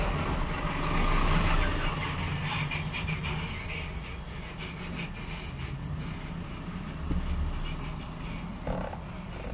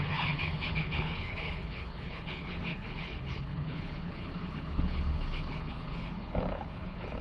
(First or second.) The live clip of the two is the first